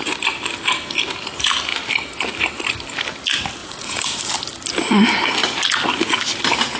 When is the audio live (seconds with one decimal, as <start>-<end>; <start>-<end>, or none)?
0.0-3.6; 4.3-6.8